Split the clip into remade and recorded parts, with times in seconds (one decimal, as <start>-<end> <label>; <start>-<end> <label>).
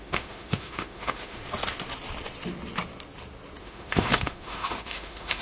0.0-1.4 remade; 1.4-3.6 recorded; 3.6-5.4 remade